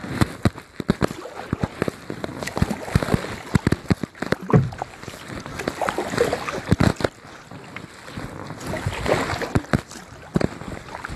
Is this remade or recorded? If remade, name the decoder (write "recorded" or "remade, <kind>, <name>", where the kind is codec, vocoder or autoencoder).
recorded